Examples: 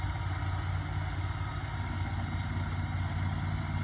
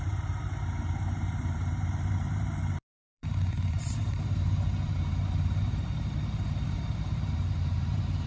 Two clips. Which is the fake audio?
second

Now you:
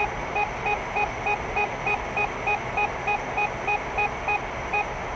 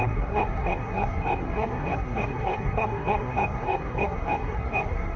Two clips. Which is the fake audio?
second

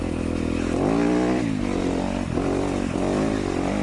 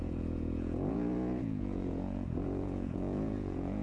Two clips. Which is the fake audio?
second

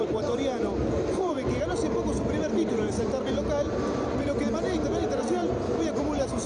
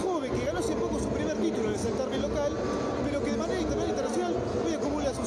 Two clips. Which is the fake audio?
first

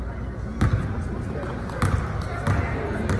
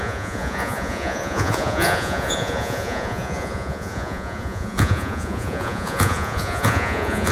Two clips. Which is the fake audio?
second